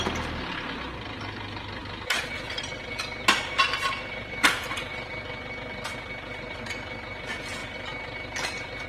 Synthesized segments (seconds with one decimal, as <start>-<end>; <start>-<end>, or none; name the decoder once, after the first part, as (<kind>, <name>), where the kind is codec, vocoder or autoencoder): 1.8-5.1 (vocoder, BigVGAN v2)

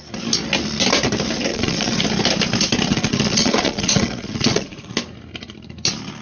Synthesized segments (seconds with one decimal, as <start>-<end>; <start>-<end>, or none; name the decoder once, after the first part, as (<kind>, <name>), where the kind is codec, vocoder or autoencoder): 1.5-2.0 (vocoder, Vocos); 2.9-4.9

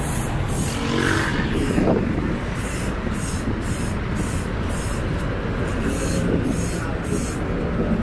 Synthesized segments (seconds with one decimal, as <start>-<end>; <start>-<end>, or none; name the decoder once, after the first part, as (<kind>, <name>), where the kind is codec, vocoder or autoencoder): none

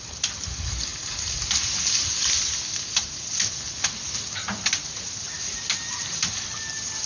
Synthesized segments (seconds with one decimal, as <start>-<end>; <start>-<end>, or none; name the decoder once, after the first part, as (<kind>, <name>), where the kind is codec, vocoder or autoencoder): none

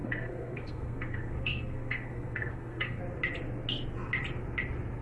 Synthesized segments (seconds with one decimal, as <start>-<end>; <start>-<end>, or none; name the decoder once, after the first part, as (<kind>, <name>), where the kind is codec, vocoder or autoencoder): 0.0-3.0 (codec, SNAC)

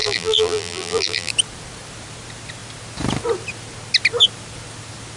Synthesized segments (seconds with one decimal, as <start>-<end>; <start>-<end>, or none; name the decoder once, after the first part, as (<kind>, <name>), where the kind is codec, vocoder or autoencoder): 0.0-1.3 (vocoder, BigVGAN v2)